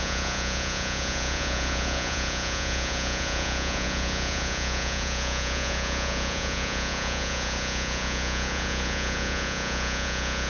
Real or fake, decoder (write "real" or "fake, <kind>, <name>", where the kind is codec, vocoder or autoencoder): fake, vocoder, Vocos